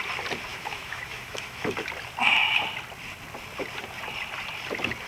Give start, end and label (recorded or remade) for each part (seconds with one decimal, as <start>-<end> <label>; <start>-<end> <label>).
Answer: 0.0-0.5 recorded; 0.5-1.7 remade; 1.7-5.1 recorded